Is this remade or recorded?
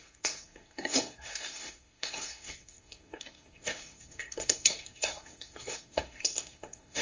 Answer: remade